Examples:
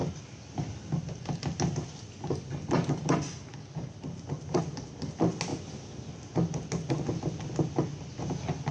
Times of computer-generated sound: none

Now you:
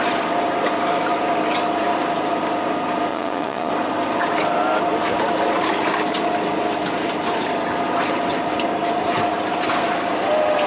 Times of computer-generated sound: 3.1-3.7

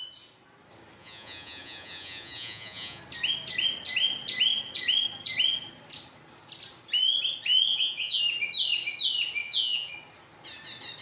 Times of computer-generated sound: 1.0-3.0; 7.7-8.2; 9.4-9.9

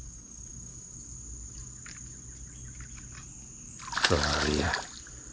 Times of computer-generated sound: none

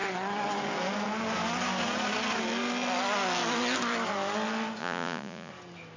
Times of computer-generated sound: 4.8-5.5

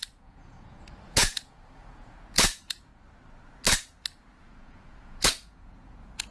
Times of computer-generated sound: 0.0-2.9; 4.4-6.3

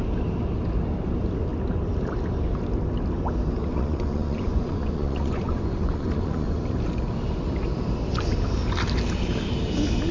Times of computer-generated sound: 3.7-6.6

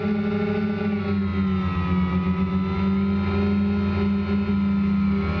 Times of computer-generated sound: none